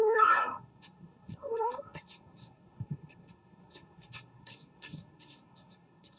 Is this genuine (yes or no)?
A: no